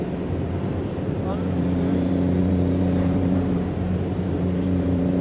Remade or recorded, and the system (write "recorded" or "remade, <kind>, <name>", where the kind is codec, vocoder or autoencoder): remade, vocoder, BigVGAN v2